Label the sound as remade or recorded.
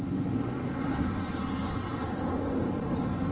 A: recorded